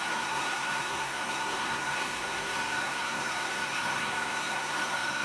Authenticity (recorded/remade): remade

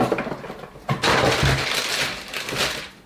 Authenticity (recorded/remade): recorded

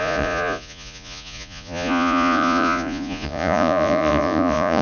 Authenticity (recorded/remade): remade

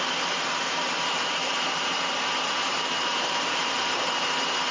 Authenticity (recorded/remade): remade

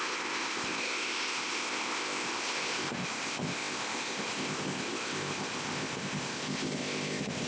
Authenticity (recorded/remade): remade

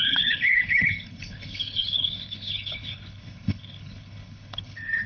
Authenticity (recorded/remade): remade